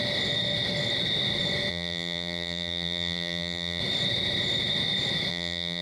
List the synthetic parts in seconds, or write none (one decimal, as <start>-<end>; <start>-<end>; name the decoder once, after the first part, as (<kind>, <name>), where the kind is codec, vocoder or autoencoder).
1.7-3.8 (vocoder, BigVGAN v2); 5.3-5.8